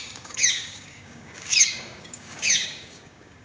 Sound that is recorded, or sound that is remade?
remade